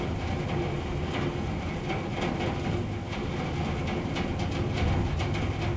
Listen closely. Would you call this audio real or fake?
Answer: real